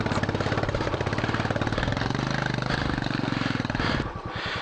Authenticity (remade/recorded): recorded